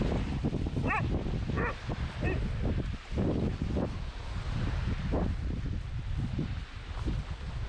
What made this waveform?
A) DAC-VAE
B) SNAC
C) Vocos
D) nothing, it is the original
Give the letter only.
D